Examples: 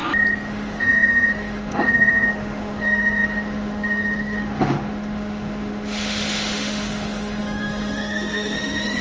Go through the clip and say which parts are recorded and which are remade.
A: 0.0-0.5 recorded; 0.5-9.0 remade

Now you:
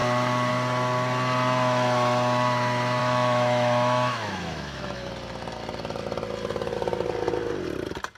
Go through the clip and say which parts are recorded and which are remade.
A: 0.0-3.0 recorded; 3.0-5.1 remade; 5.1-8.2 recorded